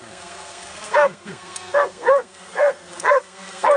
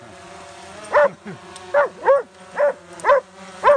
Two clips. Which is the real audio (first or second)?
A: second